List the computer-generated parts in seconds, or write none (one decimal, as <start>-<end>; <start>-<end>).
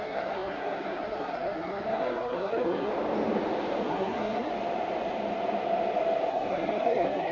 0.0-2.9; 3.8-4.5; 6.3-7.3